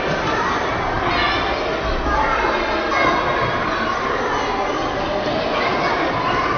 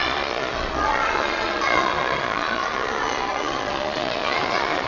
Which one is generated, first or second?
second